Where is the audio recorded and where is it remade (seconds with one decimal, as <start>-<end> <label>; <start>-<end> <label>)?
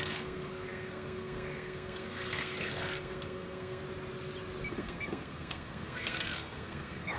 0.0-3.8 remade; 3.8-4.7 recorded; 4.7-7.2 remade